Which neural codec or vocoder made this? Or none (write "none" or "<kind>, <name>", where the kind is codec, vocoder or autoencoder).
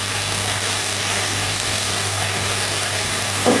codec, DAC